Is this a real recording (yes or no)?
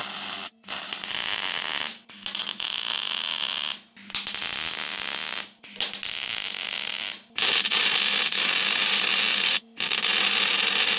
yes